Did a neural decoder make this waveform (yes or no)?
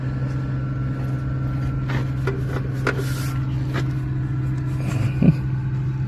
no